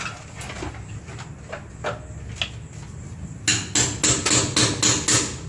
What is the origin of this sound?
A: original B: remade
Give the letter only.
A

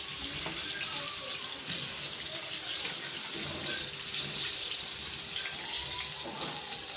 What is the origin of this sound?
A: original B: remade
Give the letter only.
A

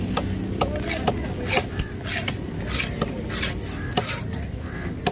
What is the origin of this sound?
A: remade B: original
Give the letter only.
B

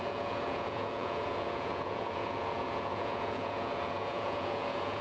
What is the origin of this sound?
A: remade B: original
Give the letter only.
A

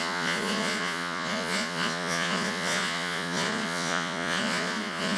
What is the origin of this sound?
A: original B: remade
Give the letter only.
B